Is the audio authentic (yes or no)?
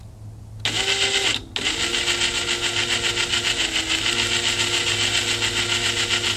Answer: yes